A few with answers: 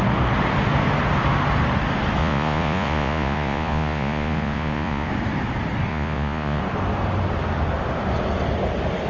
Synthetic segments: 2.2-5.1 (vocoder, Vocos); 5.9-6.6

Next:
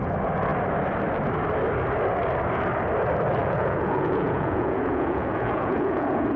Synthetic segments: 3.4-6.4 (vocoder, Vocos)

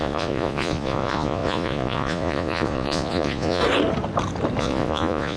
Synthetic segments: 0.0-3.6 (vocoder, Vocos); 4.6-5.4

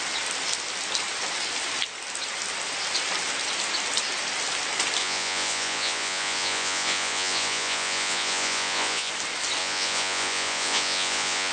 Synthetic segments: 5.0-9.1 (vocoder, Vocos); 9.6-11.5